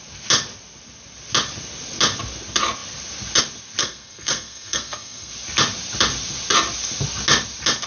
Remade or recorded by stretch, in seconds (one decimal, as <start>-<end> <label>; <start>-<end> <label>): 0.0-3.8 recorded; 3.8-5.3 remade; 5.3-7.9 recorded

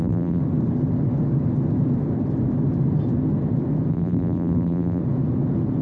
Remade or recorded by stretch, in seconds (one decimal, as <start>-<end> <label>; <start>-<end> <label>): 0.0-0.4 remade; 0.4-3.9 recorded; 3.9-5.0 remade; 5.0-5.8 recorded